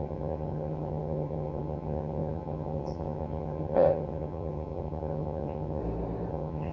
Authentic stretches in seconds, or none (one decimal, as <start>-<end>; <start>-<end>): 5.8-6.3